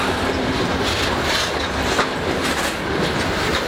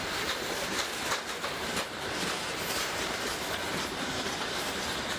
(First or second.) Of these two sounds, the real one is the first